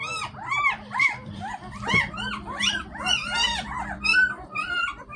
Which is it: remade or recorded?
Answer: remade